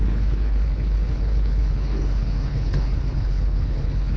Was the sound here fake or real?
fake